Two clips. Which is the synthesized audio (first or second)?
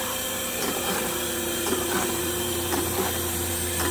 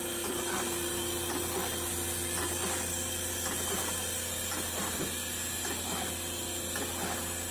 first